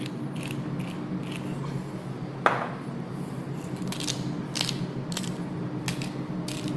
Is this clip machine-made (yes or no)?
no